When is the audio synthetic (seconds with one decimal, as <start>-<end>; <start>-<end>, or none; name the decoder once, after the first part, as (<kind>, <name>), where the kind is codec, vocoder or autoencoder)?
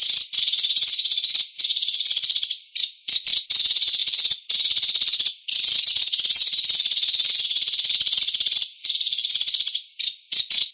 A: 1.7-3.3 (vocoder, BigVGAN v2); 7.5-9.8